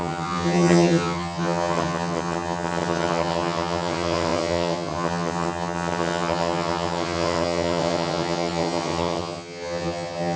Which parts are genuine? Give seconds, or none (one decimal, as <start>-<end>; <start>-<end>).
none